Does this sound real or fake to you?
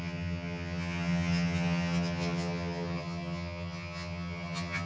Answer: fake